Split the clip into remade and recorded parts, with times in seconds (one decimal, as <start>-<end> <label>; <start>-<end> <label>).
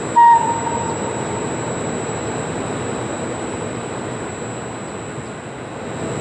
0.0-0.6 recorded; 0.6-4.3 remade; 4.3-6.2 recorded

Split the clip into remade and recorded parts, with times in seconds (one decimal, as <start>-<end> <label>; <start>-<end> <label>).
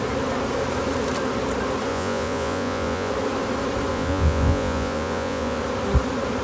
0.0-1.9 recorded; 1.9-3.1 remade; 3.1-3.9 recorded; 3.9-5.6 remade; 5.6-6.4 recorded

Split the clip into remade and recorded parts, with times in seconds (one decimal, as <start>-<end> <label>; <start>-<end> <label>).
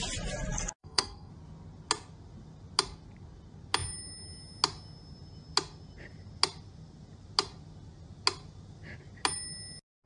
0.0-0.8 recorded; 0.8-1.3 remade; 1.3-10.1 recorded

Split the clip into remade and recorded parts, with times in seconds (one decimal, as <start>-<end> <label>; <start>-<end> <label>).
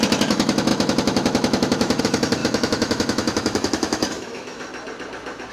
0.0-4.7 remade; 4.7-5.5 recorded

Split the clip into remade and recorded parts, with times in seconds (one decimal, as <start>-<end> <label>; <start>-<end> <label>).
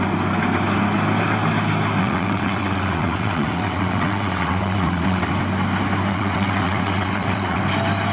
0.0-2.0 recorded; 2.0-5.3 remade; 5.3-6.1 recorded; 6.1-7.6 remade; 7.6-8.1 recorded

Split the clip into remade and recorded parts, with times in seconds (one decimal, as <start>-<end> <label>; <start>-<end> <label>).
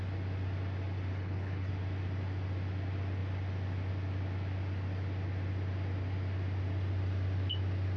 0.0-1.1 recorded; 1.1-1.7 remade; 1.7-8.0 recorded